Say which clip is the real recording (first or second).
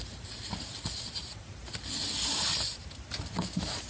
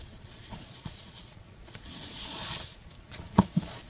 first